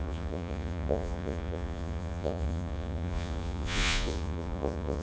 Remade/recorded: remade